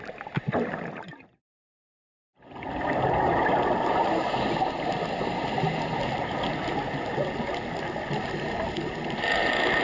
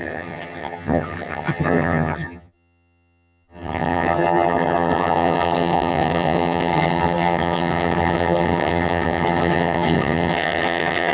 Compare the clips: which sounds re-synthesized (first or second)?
second